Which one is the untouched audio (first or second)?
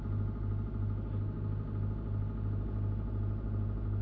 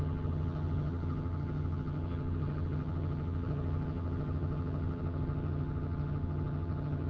first